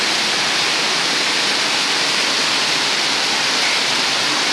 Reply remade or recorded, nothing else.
recorded